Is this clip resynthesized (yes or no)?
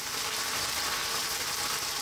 no